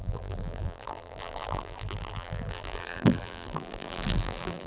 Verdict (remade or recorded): remade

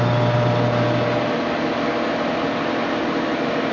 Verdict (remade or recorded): recorded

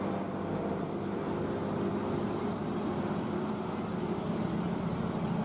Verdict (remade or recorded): recorded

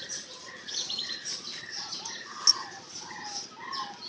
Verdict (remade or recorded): recorded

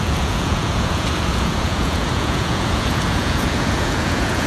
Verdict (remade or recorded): remade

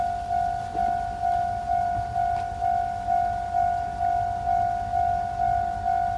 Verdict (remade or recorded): recorded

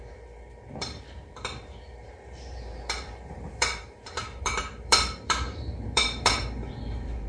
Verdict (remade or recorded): remade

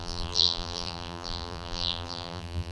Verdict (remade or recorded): remade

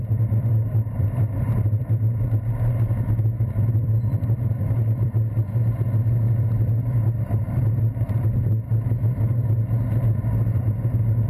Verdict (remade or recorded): remade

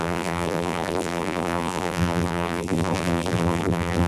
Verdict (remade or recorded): remade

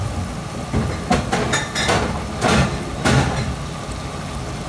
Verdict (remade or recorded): recorded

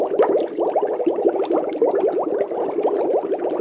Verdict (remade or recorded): recorded